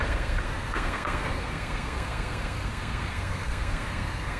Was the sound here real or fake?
fake